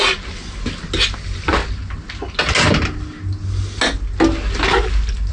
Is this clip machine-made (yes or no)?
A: no